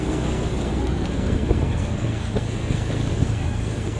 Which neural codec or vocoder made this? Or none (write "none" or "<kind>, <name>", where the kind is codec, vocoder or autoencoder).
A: codec, SNAC